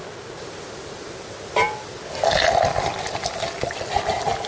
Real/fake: real